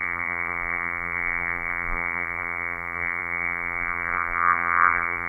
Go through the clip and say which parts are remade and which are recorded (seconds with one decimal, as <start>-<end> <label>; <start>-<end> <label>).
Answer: 0.0-5.3 remade